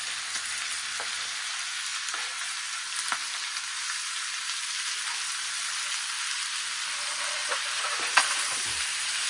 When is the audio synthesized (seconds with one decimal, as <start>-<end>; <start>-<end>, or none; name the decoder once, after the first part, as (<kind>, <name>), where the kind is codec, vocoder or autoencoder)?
7.4-9.3 (vocoder, BigVGAN v2)